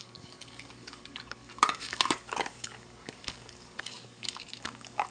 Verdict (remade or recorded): remade